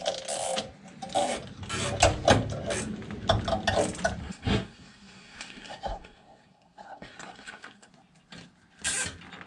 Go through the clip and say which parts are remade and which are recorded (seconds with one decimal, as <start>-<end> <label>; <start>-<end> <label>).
0.0-4.2 recorded; 4.2-7.9 remade; 7.9-9.5 recorded